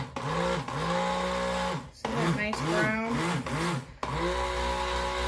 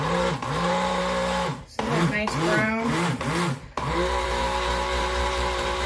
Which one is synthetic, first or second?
second